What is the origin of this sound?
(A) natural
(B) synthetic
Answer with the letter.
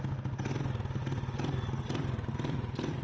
A